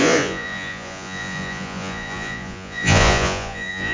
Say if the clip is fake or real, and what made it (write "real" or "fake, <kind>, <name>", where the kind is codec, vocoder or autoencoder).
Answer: fake, vocoder, Vocos